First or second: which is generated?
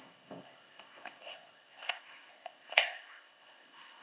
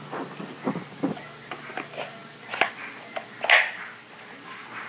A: first